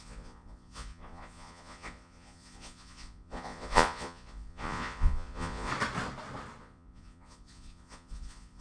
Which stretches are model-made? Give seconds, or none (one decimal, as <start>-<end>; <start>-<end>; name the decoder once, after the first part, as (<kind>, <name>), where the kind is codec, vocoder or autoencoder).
0.0-5.7 (vocoder, Vocos); 6.6-8.6